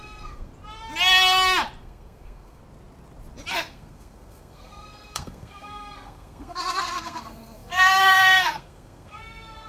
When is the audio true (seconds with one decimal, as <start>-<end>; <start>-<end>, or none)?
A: 0.5-1.8; 2.6-3.5